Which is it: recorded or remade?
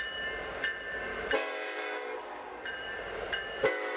remade